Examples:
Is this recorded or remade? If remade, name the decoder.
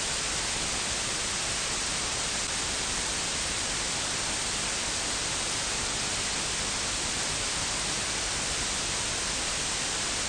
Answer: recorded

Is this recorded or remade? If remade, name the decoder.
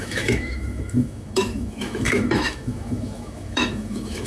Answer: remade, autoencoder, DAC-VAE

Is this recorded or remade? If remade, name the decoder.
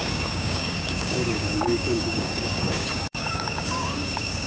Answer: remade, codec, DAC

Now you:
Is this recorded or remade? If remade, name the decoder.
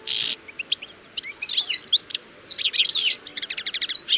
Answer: recorded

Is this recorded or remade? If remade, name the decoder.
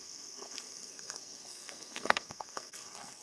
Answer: remade, codec, SNAC